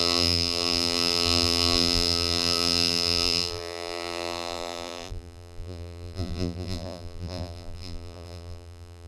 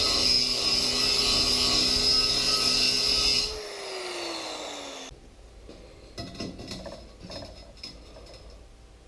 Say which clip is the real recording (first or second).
second